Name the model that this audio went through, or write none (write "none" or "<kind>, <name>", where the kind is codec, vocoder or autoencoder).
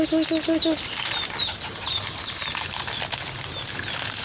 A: none